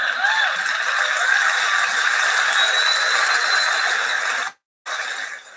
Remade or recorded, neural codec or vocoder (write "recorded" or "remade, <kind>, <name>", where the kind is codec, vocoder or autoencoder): recorded